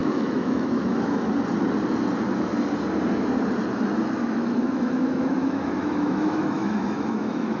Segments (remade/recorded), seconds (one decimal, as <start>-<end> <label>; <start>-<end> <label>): 0.0-1.3 remade; 1.3-4.2 recorded; 4.2-7.6 remade